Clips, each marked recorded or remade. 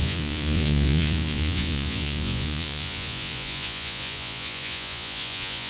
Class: remade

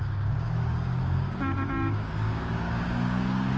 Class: remade